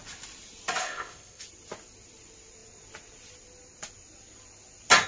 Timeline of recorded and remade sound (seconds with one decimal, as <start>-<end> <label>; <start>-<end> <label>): 0.0-0.8 recorded; 0.8-1.4 remade; 1.4-5.1 recorded